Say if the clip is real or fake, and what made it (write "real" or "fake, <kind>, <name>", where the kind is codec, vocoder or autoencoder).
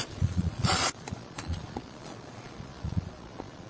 fake, vocoder, Vocos